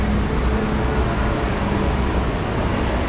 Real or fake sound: real